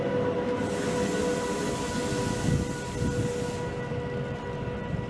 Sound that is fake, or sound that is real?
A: real